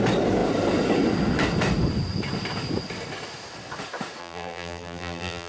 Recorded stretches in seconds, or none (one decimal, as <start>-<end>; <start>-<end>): 0.0-4.2